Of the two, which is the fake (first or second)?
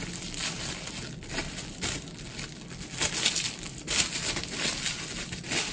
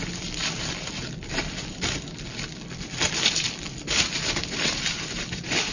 second